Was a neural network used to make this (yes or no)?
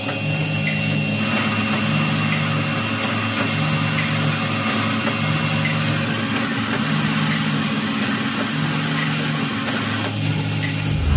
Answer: no